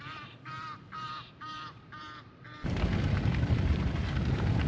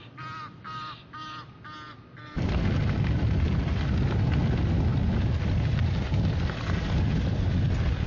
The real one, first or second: second